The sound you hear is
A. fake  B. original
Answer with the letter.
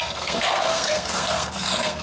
A